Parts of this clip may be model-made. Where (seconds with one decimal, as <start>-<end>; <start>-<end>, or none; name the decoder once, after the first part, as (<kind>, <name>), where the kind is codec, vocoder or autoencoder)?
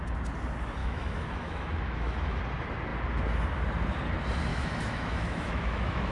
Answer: 0.8-2.4 (autoencoder, DAC-VAE); 4.5-6.1